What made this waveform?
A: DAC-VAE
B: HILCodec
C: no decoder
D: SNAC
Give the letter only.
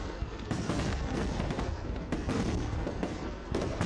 D